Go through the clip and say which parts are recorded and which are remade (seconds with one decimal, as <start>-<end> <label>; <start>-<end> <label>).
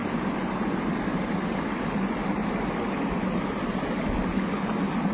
0.0-5.1 recorded